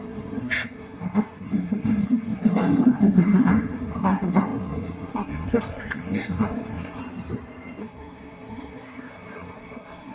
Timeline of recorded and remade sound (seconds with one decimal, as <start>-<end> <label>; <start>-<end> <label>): 0.0-7.0 remade; 7.0-7.8 recorded; 7.8-10.1 remade